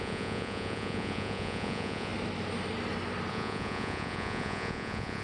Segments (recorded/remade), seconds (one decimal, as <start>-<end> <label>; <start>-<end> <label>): 0.0-2.1 remade; 2.1-3.3 recorded; 3.3-5.2 remade